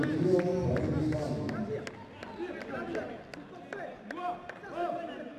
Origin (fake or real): real